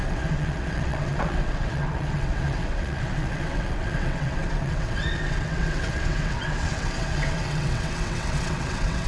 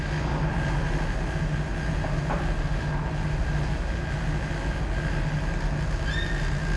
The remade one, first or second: first